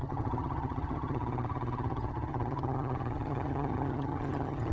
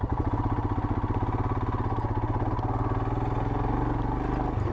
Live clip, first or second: second